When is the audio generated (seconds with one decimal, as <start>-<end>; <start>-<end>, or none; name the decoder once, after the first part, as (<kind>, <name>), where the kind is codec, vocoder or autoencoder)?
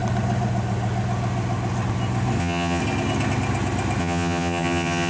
2.4-2.8 (vocoder, HiFi-GAN); 4.0-5.1